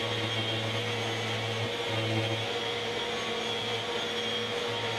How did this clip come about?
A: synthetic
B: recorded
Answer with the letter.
B